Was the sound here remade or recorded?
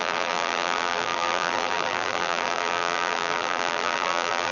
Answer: remade